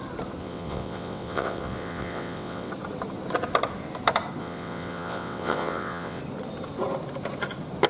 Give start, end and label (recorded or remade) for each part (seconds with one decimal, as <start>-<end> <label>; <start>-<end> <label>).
0.0-0.4 recorded; 0.4-2.7 remade; 2.7-4.4 recorded; 4.4-6.2 remade; 6.2-7.9 recorded